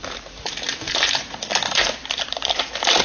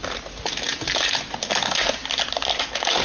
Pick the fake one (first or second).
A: first